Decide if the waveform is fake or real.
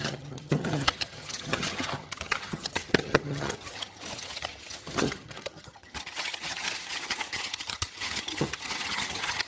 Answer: fake